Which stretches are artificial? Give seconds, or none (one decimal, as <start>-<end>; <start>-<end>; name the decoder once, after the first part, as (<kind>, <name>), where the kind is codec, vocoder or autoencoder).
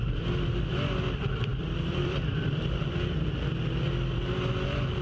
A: 1.5-4.5 (vocoder, BigVGAN v2)